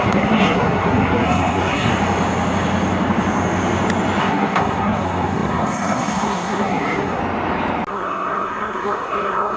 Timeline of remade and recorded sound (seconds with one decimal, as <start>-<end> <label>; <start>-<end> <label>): 0.0-1.9 remade; 1.9-4.2 recorded; 4.2-7.2 remade; 7.2-7.9 recorded; 7.9-9.6 remade